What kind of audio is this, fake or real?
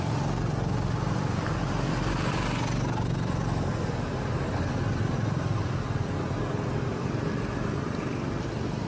real